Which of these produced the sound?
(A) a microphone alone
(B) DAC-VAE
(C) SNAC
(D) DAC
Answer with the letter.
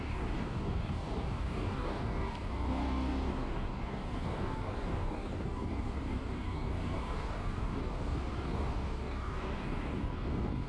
D